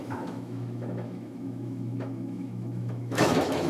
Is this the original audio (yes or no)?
no